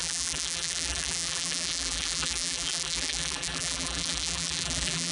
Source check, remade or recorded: remade